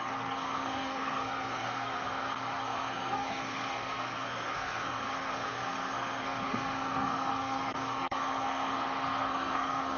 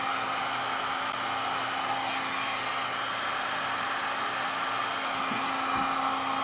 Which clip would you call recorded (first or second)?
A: second